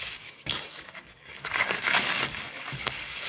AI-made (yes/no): yes